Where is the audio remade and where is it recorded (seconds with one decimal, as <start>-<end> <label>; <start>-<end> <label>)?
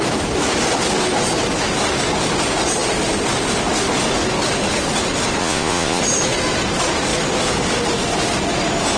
0.0-5.4 recorded; 5.4-6.0 remade; 6.0-9.0 recorded